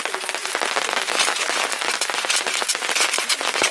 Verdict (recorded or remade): recorded